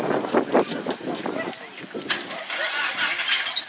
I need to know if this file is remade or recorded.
recorded